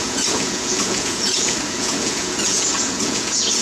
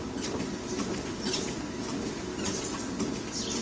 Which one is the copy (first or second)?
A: first